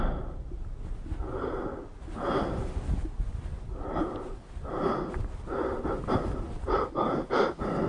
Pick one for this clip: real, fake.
real